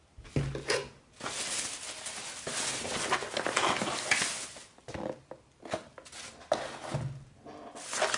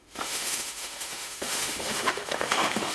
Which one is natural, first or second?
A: first